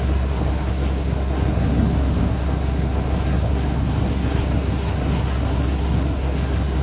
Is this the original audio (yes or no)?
no